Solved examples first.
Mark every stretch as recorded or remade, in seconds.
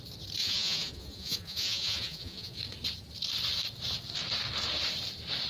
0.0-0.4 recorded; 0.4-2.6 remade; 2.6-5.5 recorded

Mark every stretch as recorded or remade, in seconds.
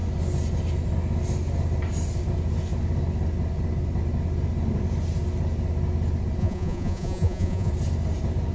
0.0-6.4 recorded; 6.4-7.7 remade; 7.7-8.5 recorded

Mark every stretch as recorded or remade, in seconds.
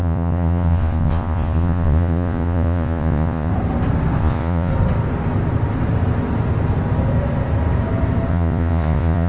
0.0-3.5 remade; 3.5-4.2 recorded; 4.2-4.7 remade; 4.7-8.3 recorded; 8.3-9.3 remade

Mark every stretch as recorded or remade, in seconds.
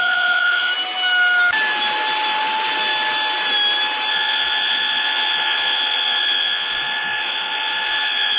0.0-0.7 remade; 0.7-4.1 recorded; 4.1-8.4 remade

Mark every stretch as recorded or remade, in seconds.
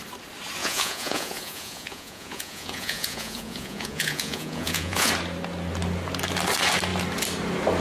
0.0-0.6 recorded; 0.6-5.1 remade; 5.1-7.8 recorded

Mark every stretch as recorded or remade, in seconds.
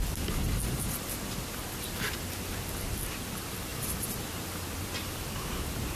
0.0-6.0 recorded